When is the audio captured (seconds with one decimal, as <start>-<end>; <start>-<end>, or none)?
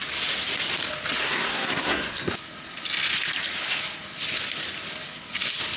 0.0-1.2; 2.3-5.8